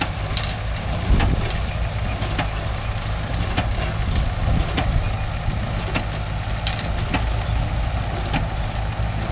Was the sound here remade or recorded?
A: recorded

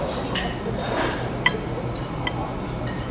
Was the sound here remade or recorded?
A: recorded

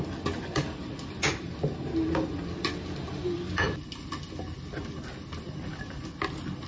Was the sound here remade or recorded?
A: recorded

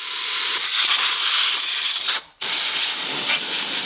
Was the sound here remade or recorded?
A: recorded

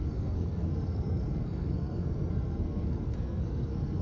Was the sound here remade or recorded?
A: remade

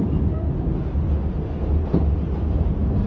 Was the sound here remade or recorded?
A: recorded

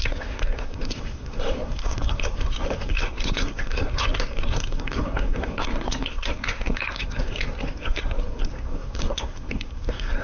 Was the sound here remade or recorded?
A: remade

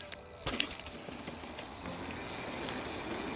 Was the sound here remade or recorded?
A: recorded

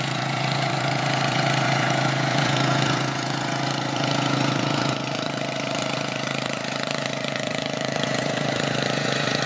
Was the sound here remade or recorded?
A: remade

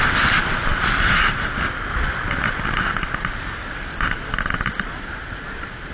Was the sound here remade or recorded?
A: recorded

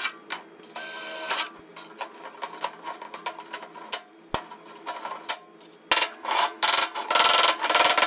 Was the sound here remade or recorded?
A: recorded